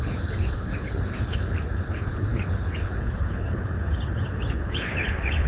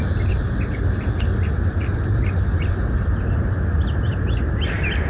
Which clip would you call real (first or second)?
second